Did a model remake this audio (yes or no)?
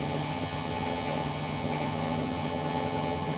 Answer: yes